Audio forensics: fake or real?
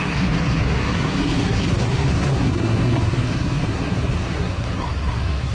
fake